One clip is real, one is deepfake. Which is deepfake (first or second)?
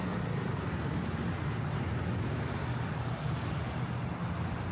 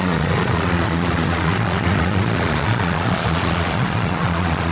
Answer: second